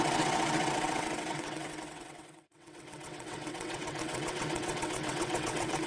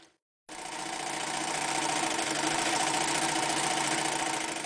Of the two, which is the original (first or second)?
second